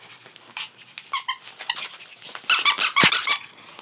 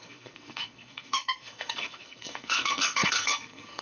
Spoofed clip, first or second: second